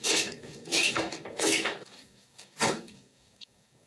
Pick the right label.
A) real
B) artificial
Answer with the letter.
B